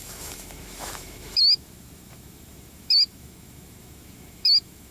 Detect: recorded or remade remade